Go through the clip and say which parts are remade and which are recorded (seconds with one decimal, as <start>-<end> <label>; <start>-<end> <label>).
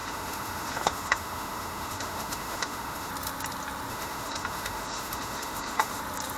0.0-3.1 remade; 3.1-3.9 recorded; 3.9-6.0 remade; 6.0-6.4 recorded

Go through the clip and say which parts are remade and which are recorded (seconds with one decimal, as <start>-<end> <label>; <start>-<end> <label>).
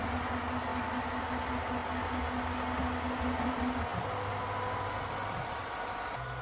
0.0-6.4 recorded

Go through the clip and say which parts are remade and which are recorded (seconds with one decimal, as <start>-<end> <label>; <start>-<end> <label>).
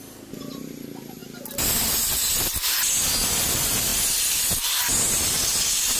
0.0-6.0 recorded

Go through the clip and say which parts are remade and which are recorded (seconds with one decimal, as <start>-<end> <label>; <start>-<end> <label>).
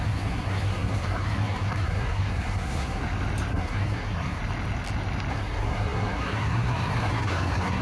0.0-3.0 remade; 3.0-3.5 recorded; 3.5-4.4 remade; 4.4-5.3 recorded; 5.3-7.8 remade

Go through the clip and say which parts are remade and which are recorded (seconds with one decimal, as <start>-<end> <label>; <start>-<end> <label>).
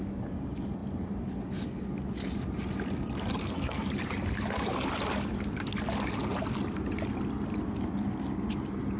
0.0-3.4 recorded; 3.4-3.9 remade; 3.9-9.0 recorded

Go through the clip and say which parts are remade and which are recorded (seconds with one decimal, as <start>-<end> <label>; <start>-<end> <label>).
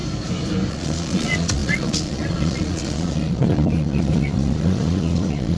0.0-0.7 recorded; 0.7-5.6 remade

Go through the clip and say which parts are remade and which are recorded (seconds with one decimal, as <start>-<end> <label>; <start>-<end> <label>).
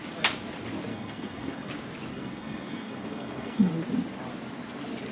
0.0-0.9 recorded; 0.9-1.7 remade; 1.7-2.1 recorded; 2.1-3.7 remade; 3.7-5.1 recorded